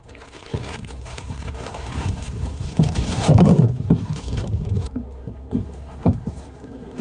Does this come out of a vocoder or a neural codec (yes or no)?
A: yes